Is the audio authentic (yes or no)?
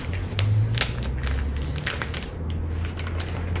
yes